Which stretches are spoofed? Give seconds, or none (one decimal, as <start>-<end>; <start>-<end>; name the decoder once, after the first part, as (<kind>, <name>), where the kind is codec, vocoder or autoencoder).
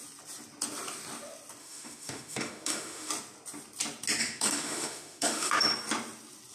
1.6-3.1 (autoencoder, DAC-VAE); 4.2-5.5